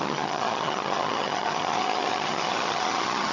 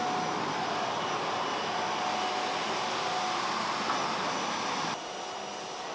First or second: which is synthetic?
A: first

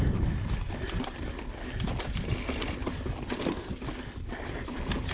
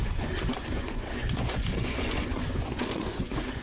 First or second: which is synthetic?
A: second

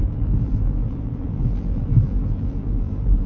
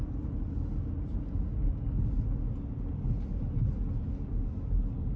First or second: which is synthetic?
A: first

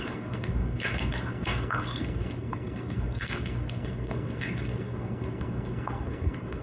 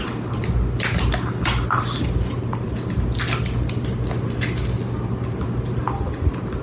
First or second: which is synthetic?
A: first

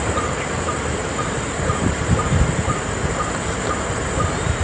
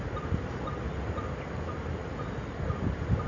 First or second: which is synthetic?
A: first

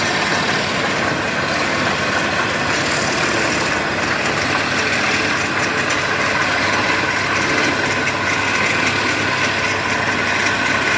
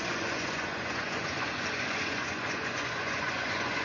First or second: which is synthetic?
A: second